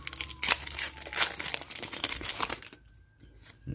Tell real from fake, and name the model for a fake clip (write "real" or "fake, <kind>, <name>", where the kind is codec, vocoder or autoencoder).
real